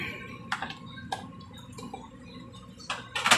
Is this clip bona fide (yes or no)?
yes